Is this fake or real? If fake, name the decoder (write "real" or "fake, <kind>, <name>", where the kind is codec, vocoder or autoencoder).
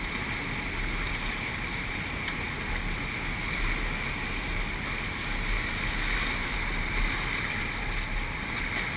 real